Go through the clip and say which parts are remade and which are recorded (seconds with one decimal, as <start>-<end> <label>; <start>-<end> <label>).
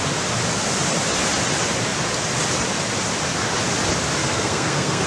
0.0-4.2 recorded; 4.2-5.1 remade